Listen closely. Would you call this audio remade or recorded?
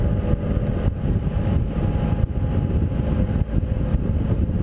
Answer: recorded